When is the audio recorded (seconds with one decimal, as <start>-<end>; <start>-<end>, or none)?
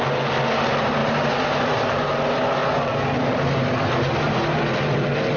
0.0-1.0; 2.2-5.4